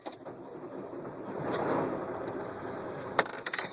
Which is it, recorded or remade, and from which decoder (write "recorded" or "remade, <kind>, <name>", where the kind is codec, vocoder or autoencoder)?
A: recorded